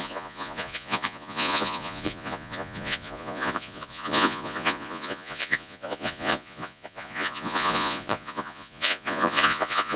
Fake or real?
fake